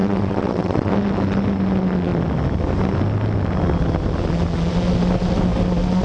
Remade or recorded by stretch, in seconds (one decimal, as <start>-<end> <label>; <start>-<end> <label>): 0.0-0.9 remade; 0.9-6.0 recorded